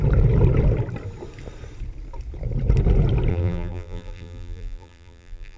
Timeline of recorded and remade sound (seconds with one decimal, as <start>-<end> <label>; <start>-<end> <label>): 0.0-3.3 recorded; 3.3-5.6 remade